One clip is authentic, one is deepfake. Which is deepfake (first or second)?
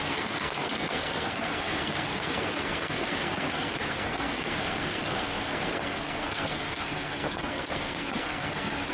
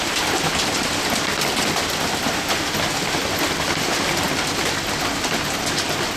first